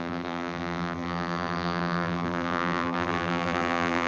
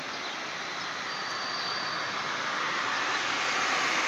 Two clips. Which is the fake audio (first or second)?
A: first